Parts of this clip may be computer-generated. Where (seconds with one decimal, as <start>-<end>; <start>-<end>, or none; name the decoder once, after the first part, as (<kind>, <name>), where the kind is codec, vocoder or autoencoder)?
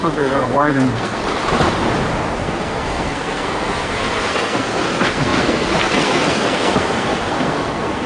0.0-1.2 (codec, SNAC); 2.4-8.1